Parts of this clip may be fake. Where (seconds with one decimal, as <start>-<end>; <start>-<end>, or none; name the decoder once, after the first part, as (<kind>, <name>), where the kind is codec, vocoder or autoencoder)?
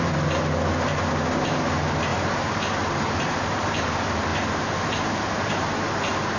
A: 2.1-3.6 (vocoder, BigVGAN v2); 4.3-5.9